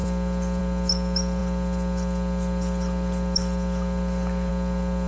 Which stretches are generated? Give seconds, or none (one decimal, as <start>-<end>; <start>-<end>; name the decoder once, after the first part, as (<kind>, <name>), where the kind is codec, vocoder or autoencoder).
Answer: none